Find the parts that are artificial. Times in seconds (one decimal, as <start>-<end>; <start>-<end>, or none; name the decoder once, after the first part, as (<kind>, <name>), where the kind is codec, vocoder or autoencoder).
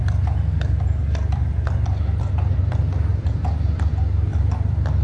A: 3.1-3.9 (vocoder, BigVGAN v2)